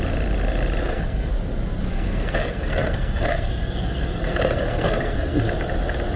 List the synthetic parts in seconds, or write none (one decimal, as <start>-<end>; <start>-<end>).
0.8-1.3; 1.9-5.4